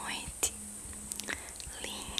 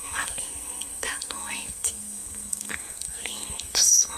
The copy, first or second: second